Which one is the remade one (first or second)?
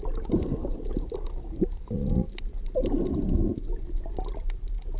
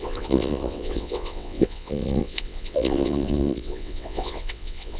second